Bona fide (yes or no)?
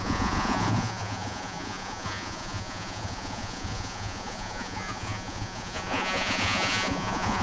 no